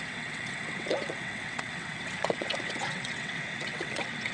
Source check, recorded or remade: remade